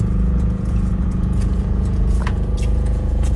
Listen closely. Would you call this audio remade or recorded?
remade